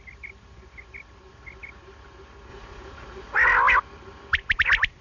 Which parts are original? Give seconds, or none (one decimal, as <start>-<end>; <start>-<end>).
0.0-2.5; 3.4-5.0